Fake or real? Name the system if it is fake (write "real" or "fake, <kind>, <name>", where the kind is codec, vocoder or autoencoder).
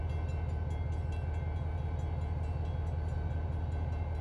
real